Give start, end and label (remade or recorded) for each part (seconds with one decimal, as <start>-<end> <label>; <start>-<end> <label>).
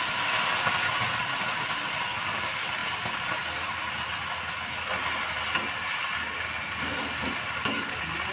0.0-8.3 recorded